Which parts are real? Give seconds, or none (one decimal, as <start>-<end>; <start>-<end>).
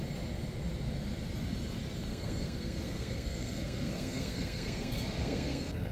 0.0-2.1